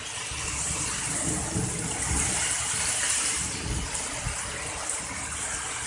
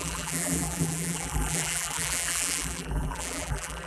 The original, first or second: first